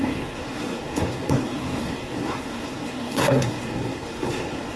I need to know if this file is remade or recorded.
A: remade